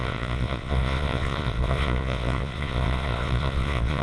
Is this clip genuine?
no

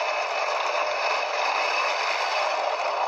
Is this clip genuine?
yes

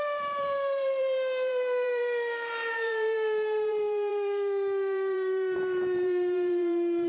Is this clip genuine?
no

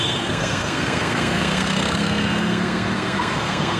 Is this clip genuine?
no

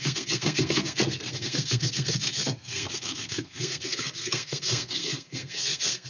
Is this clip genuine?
no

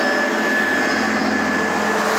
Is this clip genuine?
yes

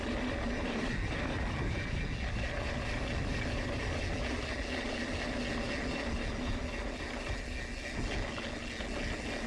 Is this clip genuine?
yes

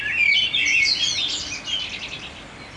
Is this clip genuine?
yes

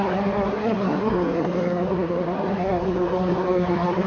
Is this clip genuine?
no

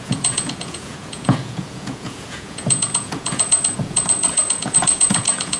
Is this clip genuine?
no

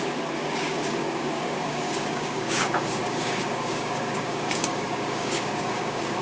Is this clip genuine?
no